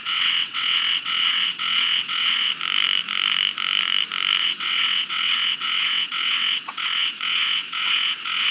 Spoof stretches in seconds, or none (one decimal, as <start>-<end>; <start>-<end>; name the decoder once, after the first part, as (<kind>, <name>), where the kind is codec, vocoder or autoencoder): 0.0-2.5 (vocoder, WaveNeXt); 4.4-8.5